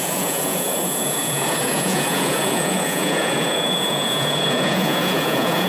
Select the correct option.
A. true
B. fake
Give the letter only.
B